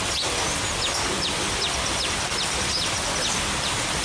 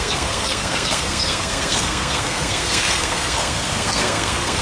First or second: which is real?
first